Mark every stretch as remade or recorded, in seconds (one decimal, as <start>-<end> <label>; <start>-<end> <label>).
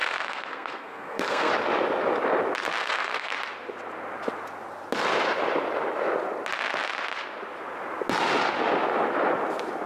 0.0-1.5 remade; 1.5-2.8 recorded; 2.8-3.3 remade; 3.3-9.9 recorded